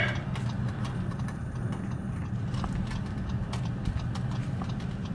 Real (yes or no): yes